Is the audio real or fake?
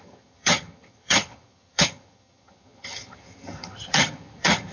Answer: fake